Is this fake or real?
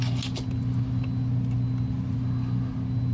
real